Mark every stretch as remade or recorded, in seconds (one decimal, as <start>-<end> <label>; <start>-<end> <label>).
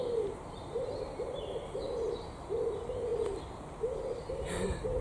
0.0-3.1 remade; 3.1-4.3 recorded; 4.3-5.0 remade